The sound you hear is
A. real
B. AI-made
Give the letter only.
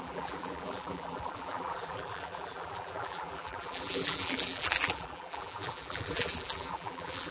B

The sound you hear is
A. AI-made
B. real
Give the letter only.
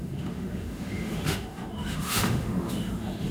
A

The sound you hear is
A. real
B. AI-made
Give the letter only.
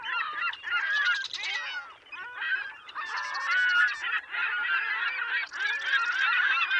A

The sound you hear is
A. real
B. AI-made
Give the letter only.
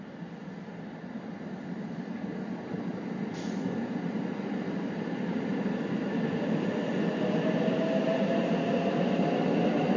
A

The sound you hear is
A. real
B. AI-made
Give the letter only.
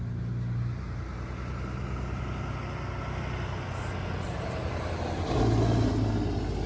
A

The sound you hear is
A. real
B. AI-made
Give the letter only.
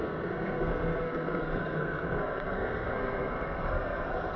B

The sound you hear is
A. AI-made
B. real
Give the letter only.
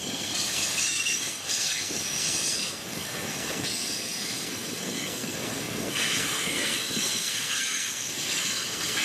A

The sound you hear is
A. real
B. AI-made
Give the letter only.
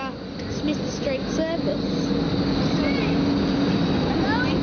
A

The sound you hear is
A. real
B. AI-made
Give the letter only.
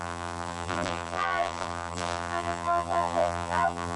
B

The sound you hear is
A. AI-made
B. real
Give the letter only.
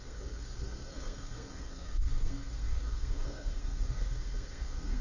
A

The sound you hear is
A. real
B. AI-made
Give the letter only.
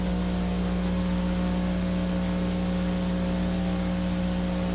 A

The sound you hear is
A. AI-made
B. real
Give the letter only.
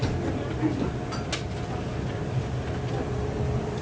B